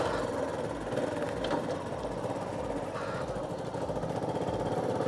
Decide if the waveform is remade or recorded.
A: recorded